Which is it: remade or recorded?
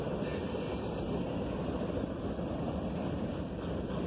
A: recorded